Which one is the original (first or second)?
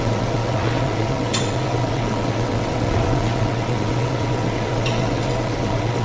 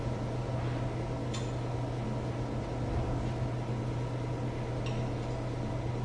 second